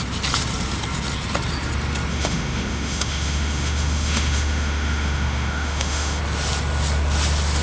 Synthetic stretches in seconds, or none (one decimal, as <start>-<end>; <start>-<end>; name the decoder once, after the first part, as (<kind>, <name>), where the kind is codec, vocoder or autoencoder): 2.1-6.2 (autoencoder, DAC-VAE)